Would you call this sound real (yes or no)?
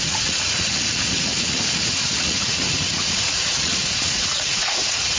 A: no